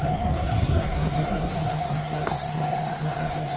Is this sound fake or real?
fake